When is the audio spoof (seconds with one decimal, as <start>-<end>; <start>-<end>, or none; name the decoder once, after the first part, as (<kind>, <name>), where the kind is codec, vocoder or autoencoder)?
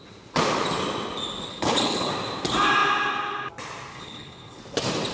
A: 1.5-2.1 (codec, HILCodec); 3.9-4.6